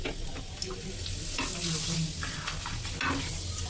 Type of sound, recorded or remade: recorded